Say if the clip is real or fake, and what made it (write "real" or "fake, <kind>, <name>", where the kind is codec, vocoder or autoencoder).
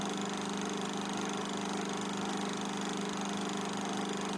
real